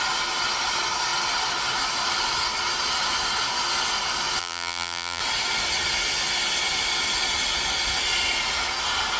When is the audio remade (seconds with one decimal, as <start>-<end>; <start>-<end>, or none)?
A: 4.4-5.2